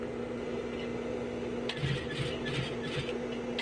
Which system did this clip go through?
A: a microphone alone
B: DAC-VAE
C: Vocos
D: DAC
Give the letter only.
A